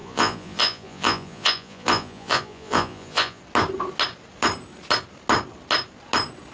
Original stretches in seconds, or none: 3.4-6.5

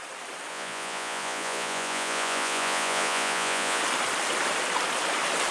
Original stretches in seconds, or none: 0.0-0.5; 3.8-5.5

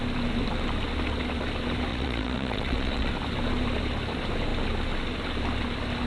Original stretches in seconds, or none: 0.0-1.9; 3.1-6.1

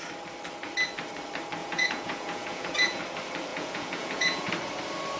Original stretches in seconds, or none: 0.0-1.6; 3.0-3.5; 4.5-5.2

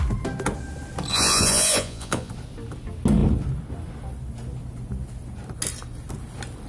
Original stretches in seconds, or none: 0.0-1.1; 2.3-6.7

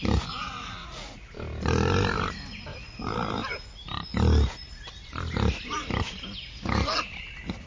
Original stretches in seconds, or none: 0.0-0.8; 1.3-7.7

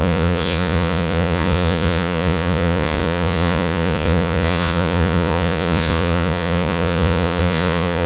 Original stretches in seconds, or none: none

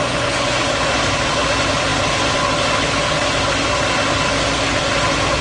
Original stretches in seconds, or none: 0.7-5.4